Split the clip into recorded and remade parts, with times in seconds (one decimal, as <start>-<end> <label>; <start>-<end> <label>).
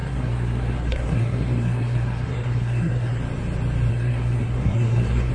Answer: 0.0-3.2 remade; 3.2-3.9 recorded; 3.9-5.3 remade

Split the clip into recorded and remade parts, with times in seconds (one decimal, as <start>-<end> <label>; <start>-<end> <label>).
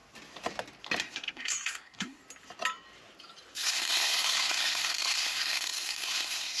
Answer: 0.0-1.0 recorded; 1.0-2.2 remade; 2.2-3.5 recorded; 3.5-6.6 remade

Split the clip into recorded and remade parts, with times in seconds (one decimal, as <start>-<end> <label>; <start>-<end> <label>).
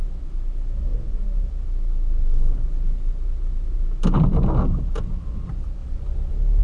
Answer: 0.0-6.6 recorded